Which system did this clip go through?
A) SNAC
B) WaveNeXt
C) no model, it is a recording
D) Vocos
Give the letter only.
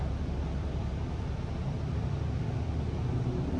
C